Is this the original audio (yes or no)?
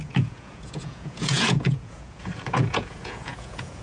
no